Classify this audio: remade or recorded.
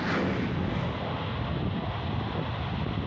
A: recorded